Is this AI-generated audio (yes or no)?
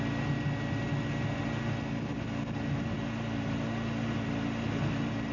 no